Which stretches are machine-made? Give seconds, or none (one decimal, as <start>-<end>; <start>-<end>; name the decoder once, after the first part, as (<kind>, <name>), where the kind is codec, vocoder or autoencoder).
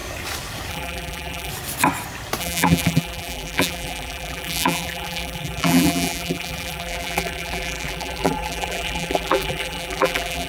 0.7-1.5 (vocoder, BigVGAN v2); 2.4-10.5